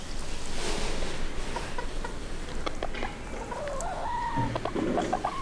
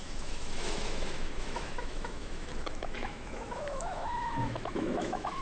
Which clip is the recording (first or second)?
first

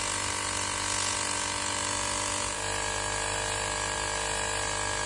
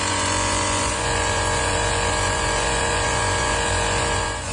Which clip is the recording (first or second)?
first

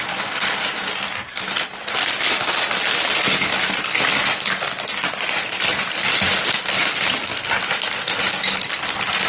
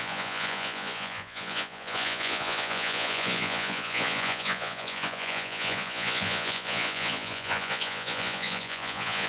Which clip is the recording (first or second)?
first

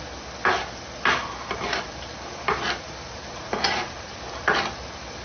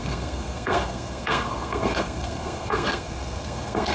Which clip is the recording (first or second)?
first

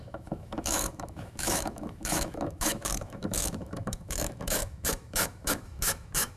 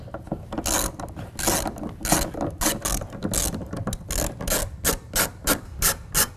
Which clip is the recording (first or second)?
second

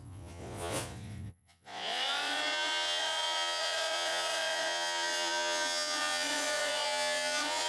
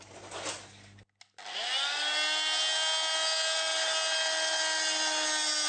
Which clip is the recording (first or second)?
second